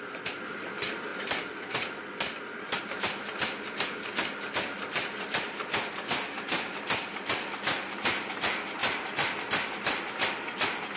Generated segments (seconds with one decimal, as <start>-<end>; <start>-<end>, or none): 0.0-1.1; 2.8-8.8